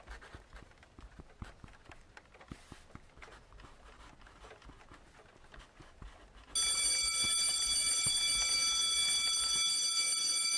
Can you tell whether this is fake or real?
real